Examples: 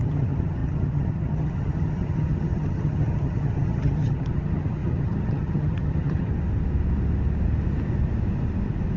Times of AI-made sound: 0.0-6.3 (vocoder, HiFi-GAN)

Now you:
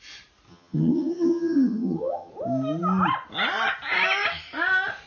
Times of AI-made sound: 0.5-2.3 (vocoder, HiFi-GAN)